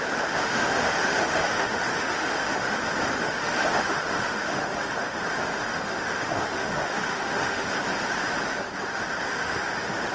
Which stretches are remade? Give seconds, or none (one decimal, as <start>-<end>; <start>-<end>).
0.5-2.8; 3.2-5.2; 5.7-7.7; 9.3-10.1